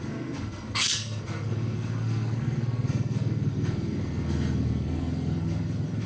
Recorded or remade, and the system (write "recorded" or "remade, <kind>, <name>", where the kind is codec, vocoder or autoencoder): remade, codec, SNAC